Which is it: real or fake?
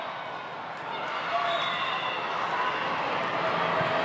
real